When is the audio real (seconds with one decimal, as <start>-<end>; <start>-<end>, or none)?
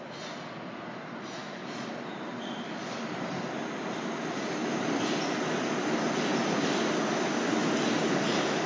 0.0-8.7